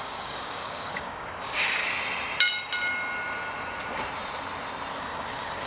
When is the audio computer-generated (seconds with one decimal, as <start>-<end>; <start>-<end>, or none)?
0.0-1.8; 5.0-5.7